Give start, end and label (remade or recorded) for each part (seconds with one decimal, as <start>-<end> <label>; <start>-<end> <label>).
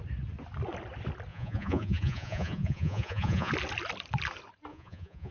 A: 0.0-1.3 recorded; 1.3-3.5 remade; 3.5-4.7 recorded; 4.7-5.3 remade